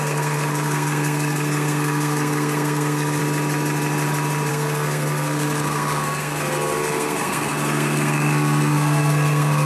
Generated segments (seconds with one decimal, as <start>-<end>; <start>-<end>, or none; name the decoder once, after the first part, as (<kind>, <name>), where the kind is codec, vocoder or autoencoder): 0.0-3.2 (codec, SNAC); 4.5-9.7